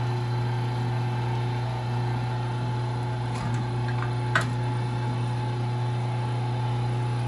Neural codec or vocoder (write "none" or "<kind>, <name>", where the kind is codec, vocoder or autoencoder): none